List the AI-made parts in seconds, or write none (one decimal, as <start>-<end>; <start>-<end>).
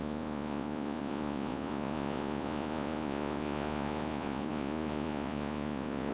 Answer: 0.0-6.1